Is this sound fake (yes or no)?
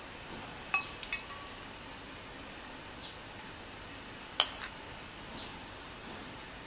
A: no